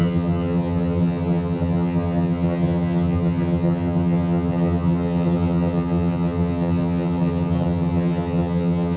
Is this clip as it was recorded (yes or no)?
no